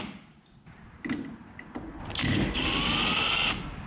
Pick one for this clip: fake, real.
real